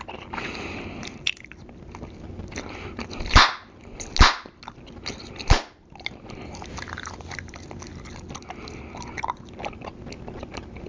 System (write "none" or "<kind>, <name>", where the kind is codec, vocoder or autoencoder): none